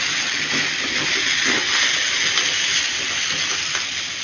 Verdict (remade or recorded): recorded